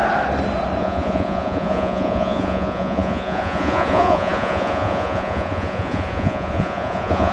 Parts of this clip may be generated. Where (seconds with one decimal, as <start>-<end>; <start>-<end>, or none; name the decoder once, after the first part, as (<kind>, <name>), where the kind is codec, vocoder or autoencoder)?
0.8-7.3 (vocoder, Vocos)

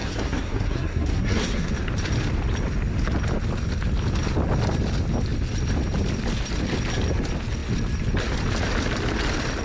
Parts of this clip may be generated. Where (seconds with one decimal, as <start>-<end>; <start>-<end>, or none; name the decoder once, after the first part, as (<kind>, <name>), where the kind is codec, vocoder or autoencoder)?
0.0-1.7 (codec, SNAC)